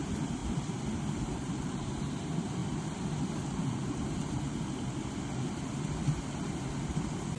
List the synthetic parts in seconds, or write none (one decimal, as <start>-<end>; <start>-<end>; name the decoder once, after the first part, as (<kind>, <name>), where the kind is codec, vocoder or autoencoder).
none